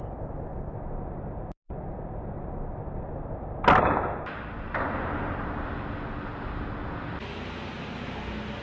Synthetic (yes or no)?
no